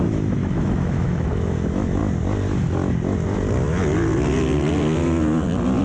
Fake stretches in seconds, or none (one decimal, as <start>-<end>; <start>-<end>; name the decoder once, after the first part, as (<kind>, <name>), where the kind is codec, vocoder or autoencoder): 0.0-2.0 (autoencoder, DAC-VAE)